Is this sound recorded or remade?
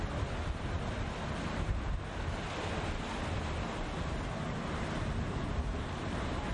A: recorded